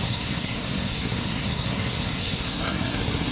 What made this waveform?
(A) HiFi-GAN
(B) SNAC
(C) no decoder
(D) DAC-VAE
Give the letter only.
B